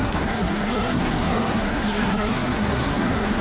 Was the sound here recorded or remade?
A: remade